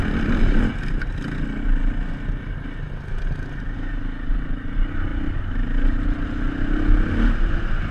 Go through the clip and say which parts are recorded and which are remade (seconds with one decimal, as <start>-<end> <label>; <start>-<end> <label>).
0.0-7.9 recorded